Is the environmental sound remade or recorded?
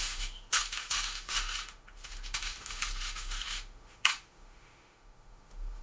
remade